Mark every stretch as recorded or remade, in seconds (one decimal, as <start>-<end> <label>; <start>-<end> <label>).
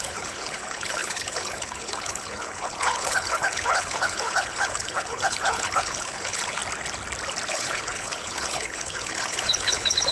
0.0-6.6 remade; 6.6-7.5 recorded; 7.5-10.1 remade